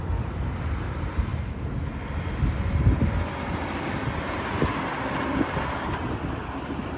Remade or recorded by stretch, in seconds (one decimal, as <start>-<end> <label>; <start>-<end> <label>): 0.0-1.3 remade; 1.3-5.5 recorded; 5.5-7.0 remade